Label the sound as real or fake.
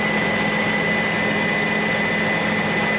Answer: real